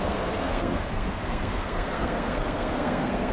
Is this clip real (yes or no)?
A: no